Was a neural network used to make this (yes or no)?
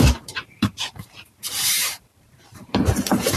yes